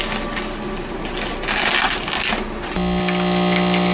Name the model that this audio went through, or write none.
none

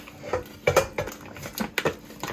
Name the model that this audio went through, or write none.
none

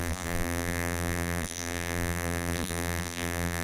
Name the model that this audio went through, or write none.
vocoder, BigVGAN v2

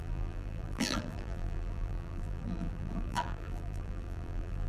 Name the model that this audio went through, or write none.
vocoder, BigVGAN v2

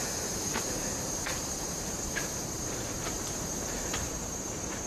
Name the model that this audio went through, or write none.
vocoder, BigVGAN v2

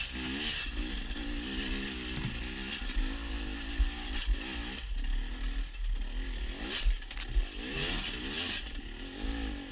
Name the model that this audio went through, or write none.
none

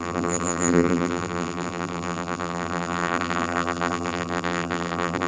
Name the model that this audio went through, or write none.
vocoder, BigVGAN v2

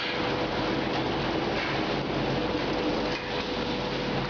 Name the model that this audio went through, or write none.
none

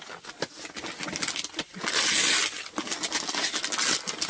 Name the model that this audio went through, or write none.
none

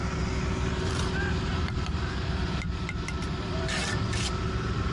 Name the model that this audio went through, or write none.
vocoder, BigVGAN v2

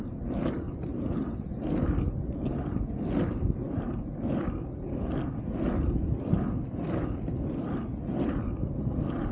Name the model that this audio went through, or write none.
none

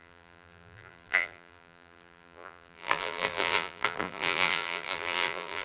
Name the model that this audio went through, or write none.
vocoder, BigVGAN v2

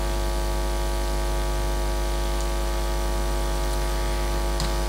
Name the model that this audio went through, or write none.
none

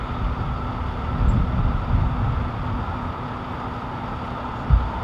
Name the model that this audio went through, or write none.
none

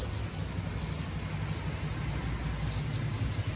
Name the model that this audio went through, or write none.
none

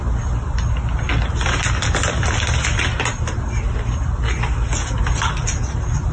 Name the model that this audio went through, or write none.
none